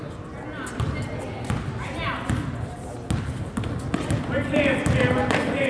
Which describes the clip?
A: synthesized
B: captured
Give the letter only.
B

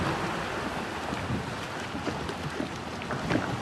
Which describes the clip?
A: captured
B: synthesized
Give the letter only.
A